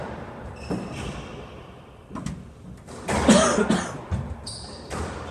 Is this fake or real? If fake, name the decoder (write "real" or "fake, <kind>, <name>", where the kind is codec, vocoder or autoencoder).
real